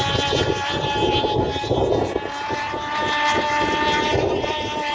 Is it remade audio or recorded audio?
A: recorded